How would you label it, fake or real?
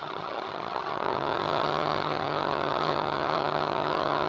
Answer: fake